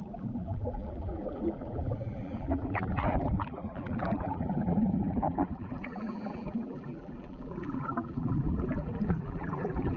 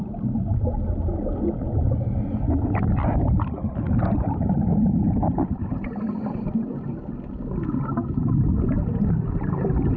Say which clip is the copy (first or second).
first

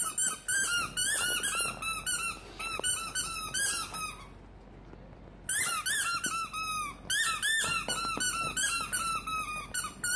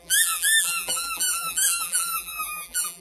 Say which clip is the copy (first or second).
second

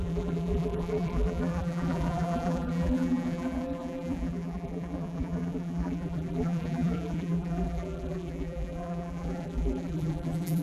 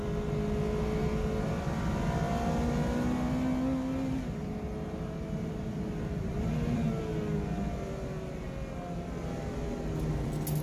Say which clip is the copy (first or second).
first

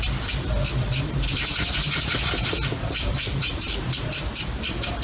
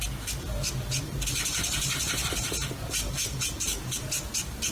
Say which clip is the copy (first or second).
first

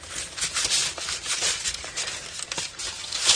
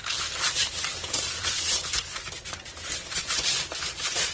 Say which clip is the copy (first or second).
second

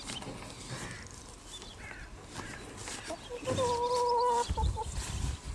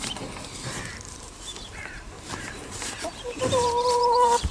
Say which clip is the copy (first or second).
second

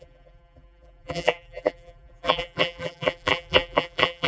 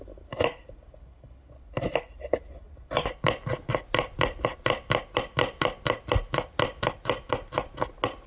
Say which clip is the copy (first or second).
first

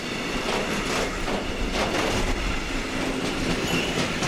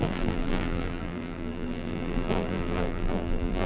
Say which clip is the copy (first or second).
second